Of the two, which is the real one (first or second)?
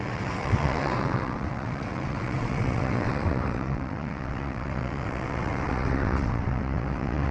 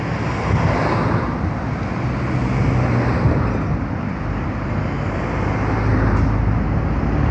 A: second